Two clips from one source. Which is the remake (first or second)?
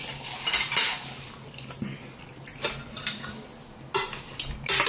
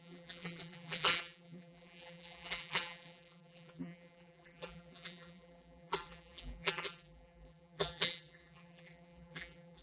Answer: second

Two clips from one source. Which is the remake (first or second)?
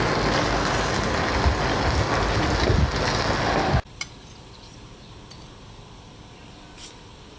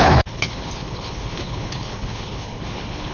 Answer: second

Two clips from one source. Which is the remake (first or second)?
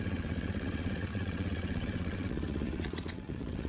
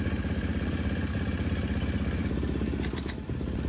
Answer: first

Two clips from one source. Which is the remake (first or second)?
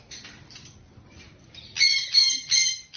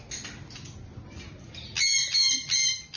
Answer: first